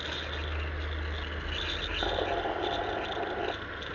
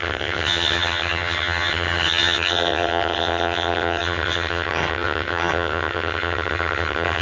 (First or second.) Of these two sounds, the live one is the first